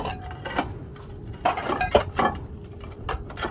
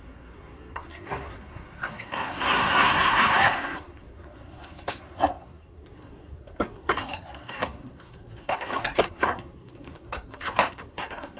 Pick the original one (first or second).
first